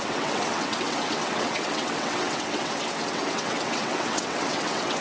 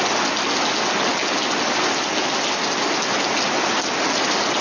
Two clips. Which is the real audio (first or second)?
second